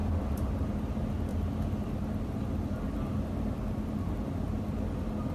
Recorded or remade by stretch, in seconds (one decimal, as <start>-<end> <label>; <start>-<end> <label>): 0.0-0.5 remade; 0.5-1.3 recorded; 1.3-4.1 remade; 4.1-5.3 recorded